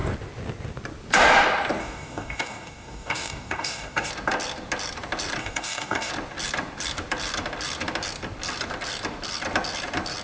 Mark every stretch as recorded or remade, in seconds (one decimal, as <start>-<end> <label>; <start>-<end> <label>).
0.0-1.8 recorded; 1.8-4.1 remade; 4.1-5.4 recorded; 5.4-6.1 remade; 6.1-10.2 recorded

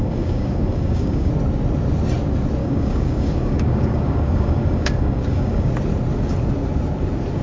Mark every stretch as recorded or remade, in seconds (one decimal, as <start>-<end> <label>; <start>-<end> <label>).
0.0-1.3 remade; 1.3-2.6 recorded; 2.6-5.7 remade; 5.7-7.4 recorded

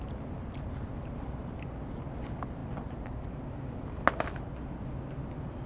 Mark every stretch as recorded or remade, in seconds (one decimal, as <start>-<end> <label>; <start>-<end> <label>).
0.0-5.7 recorded

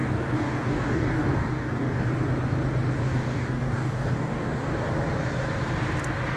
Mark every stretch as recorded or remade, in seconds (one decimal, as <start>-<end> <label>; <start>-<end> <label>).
0.0-2.1 remade; 2.1-3.0 recorded; 3.0-4.9 remade; 4.9-6.4 recorded

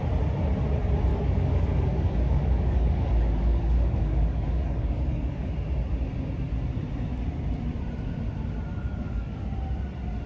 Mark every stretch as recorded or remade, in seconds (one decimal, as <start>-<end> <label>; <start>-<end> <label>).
0.0-1.1 recorded; 1.1-5.5 remade; 5.5-8.7 recorded; 8.7-9.4 remade; 9.4-10.3 recorded

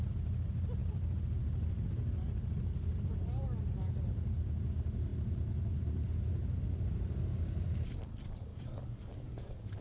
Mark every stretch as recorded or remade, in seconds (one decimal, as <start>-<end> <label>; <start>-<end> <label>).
0.0-8.5 recorded; 8.5-9.8 remade

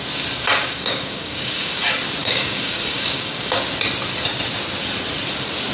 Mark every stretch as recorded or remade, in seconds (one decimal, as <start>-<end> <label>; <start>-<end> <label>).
0.0-0.6 recorded; 0.6-1.8 remade; 1.8-2.2 recorded; 2.2-3.7 remade; 3.7-5.7 recorded